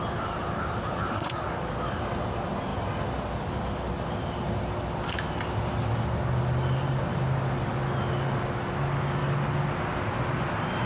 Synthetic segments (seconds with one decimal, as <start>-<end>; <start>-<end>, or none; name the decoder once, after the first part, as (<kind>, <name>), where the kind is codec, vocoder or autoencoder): 1.1-1.6 (codec, SNAC)